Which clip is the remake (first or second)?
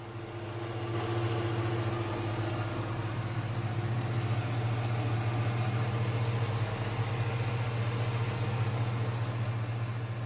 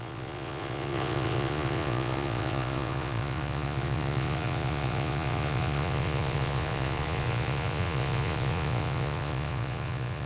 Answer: second